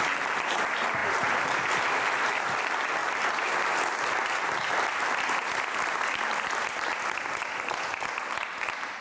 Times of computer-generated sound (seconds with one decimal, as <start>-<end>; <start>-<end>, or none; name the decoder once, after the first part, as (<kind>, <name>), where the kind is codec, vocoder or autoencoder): none